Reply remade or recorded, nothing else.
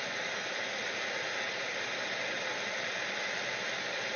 recorded